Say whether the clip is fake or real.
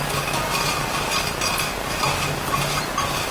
real